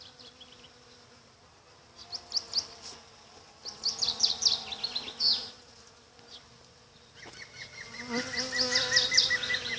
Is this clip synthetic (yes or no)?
no